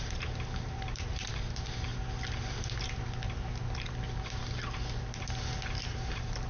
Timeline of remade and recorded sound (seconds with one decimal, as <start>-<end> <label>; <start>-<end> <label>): 0.0-1.9 remade; 1.9-5.8 recorded; 5.8-6.5 remade